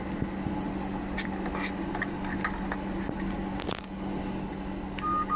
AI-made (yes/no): no